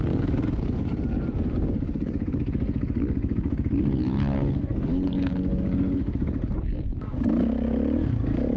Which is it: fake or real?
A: fake